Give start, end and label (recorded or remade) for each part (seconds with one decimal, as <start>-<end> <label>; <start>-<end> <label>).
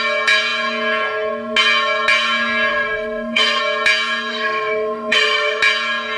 0.0-2.7 recorded; 2.7-3.6 remade; 3.6-4.3 recorded; 4.3-5.6 remade; 5.6-6.2 recorded